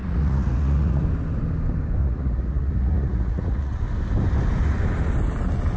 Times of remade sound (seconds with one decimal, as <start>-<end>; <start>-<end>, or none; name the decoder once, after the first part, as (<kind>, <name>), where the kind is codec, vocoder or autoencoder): 0.0-1.0 (vocoder, Vocos); 2.0-3.8